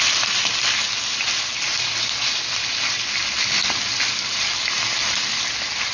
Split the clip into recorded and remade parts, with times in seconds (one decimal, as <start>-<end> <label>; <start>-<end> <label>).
0.0-5.9 recorded